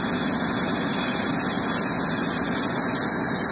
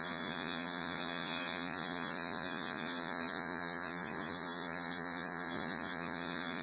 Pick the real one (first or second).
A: first